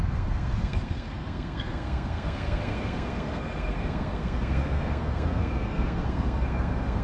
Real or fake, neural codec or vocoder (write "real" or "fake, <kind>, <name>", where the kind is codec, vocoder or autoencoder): fake, codec, SNAC